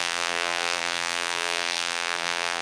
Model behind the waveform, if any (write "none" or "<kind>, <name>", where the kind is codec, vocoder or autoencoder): vocoder, BigVGAN v2